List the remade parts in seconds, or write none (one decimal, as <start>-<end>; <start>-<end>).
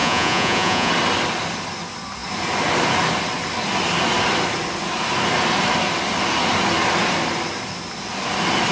0.0-0.9